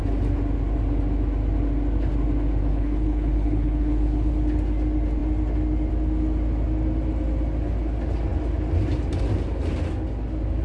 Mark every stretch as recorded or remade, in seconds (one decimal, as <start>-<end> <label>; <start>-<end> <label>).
0.0-2.6 recorded; 2.6-4.3 remade; 4.3-10.6 recorded